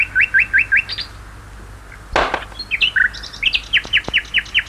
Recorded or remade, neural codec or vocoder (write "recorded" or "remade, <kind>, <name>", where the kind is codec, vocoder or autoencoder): recorded